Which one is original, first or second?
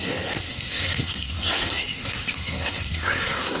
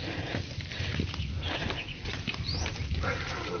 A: second